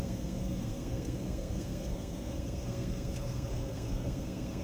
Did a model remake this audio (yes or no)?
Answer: yes